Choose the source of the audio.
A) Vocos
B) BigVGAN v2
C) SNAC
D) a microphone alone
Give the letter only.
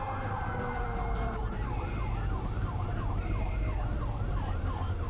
B